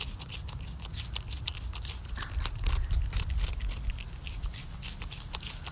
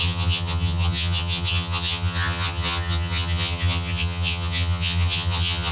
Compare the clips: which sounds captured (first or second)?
first